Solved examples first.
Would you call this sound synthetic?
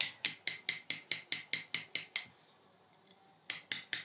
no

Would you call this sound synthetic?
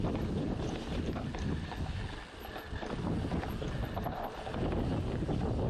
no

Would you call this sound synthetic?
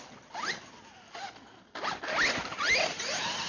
no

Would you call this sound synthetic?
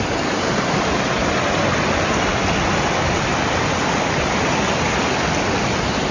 no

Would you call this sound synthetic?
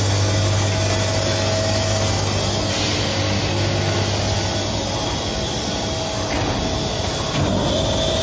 no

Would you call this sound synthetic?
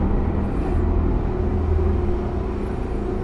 no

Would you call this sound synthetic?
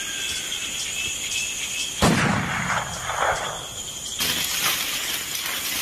no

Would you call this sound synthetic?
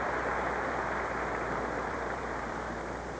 yes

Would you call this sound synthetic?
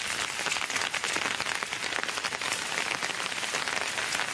no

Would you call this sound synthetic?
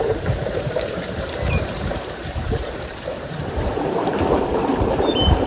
yes